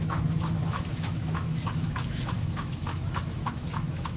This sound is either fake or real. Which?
fake